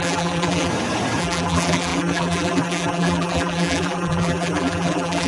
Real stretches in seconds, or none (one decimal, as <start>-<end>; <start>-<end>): 0.7-1.2